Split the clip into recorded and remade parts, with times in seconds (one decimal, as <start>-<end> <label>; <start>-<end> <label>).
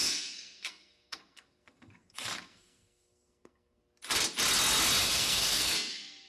0.0-3.8 remade; 3.8-5.0 recorded; 5.0-6.3 remade